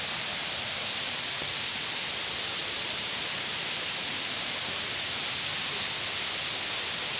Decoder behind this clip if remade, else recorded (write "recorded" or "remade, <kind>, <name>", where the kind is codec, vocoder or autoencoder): recorded